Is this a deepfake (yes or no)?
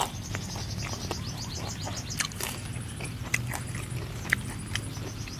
no